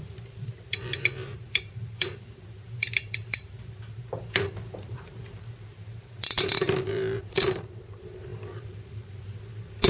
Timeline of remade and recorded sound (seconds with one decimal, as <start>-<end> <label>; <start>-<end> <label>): 0.0-9.9 remade